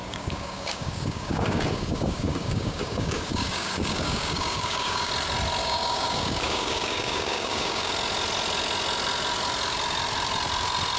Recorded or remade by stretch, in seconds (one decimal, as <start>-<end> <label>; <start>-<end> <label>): 0.0-5.1 remade; 5.1-5.6 recorded; 5.6-7.9 remade; 7.9-11.0 recorded